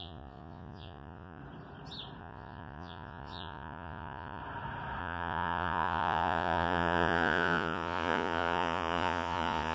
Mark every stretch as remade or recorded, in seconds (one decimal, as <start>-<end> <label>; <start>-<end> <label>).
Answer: 0.0-1.4 remade; 1.4-2.2 recorded; 2.2-4.4 remade; 4.4-5.0 recorded; 5.0-9.7 remade